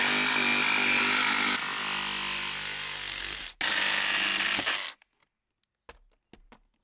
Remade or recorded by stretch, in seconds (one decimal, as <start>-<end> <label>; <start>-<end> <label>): 0.0-6.8 recorded